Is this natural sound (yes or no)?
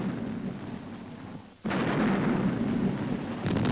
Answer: yes